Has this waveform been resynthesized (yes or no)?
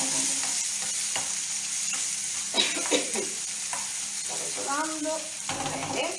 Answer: no